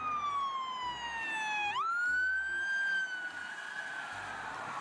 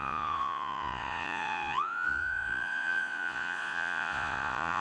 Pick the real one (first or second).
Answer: first